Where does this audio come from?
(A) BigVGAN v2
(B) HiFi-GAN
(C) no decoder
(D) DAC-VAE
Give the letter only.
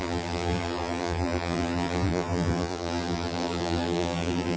A